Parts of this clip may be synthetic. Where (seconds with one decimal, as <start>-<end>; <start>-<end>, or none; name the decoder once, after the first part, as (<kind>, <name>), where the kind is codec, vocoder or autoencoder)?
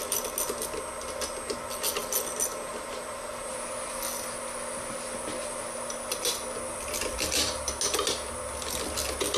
none